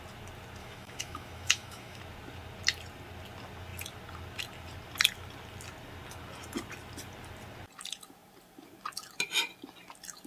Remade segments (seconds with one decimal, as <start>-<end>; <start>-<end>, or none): 0.6-2.0